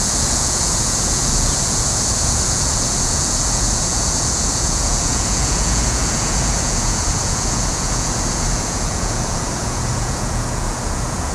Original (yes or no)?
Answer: no